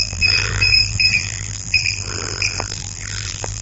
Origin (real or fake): fake